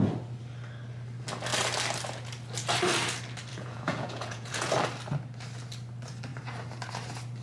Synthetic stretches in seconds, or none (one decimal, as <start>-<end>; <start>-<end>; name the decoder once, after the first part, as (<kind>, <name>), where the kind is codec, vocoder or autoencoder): 3.5-4.7 (vocoder, Vocos)